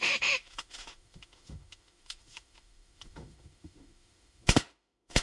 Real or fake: fake